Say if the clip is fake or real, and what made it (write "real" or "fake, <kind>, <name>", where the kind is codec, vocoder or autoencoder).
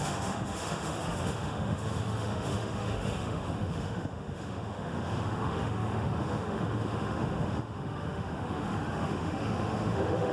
fake, autoencoder, DAC-VAE